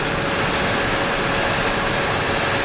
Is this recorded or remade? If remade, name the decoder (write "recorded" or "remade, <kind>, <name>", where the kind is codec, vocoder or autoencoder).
recorded